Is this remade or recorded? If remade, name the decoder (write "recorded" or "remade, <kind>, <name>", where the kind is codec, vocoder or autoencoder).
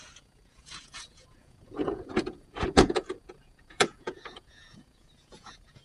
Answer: remade, vocoder, Vocos